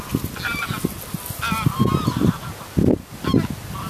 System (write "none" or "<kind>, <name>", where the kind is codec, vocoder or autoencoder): none